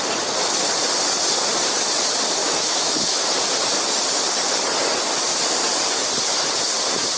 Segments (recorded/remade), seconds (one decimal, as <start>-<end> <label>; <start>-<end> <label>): 0.0-2.4 recorded; 2.4-3.2 remade; 3.2-7.2 recorded